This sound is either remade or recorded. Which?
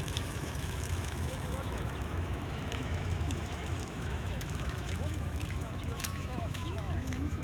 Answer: remade